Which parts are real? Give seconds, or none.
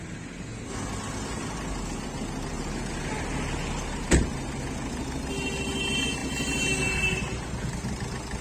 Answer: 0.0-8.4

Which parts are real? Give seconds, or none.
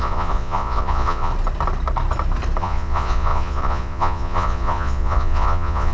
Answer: 1.3-2.6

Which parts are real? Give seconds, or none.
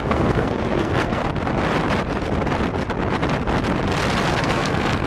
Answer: 1.2-4.3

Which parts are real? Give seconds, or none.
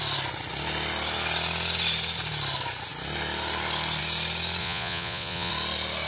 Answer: 0.0-4.6; 5.5-6.1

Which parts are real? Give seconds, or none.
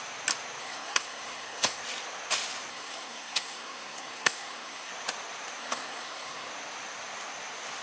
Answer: 0.0-0.6; 1.8-2.7; 4.9-5.6; 6.5-7.8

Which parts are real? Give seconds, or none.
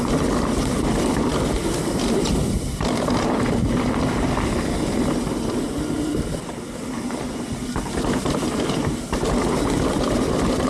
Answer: 0.0-10.7